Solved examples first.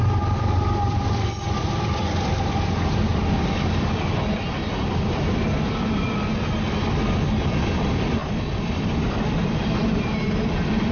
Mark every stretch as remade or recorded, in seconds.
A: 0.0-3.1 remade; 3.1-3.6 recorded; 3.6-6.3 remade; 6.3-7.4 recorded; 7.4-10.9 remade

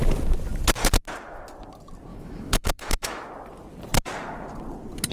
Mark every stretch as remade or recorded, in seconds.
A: 0.0-2.1 recorded; 2.1-3.3 remade; 3.3-5.1 recorded

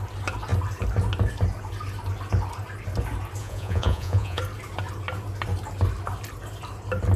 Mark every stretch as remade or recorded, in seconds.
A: 0.0-3.4 recorded; 3.4-4.4 remade; 4.4-7.2 recorded